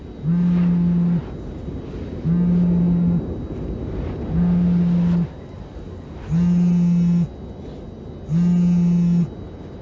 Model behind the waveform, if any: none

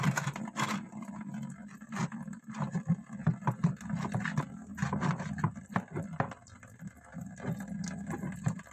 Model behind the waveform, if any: none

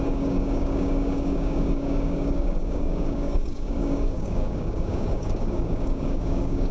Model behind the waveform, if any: codec, DAC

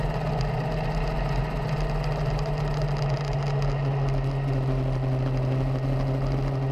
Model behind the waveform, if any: none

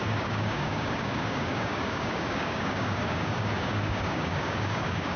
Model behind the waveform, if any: codec, DAC